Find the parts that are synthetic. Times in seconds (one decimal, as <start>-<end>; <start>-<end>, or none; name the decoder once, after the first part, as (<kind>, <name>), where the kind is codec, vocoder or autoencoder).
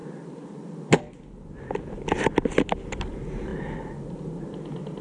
none